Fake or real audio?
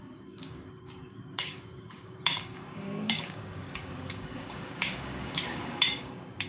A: fake